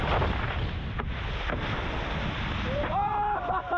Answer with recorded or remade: recorded